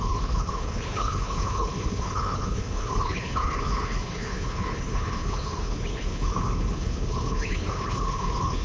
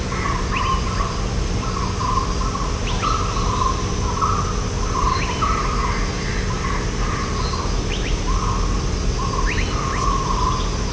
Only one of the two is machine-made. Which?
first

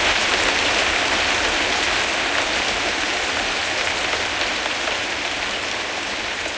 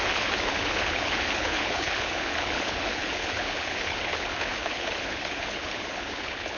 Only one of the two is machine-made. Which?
second